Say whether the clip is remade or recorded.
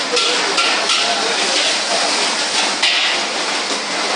recorded